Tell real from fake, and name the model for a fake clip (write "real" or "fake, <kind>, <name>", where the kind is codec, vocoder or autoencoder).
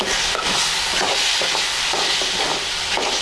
real